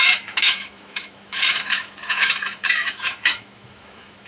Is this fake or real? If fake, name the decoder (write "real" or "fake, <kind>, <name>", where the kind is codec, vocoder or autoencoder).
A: fake, autoencoder, DAC-VAE